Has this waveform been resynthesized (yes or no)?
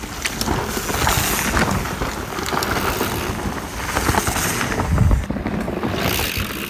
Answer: no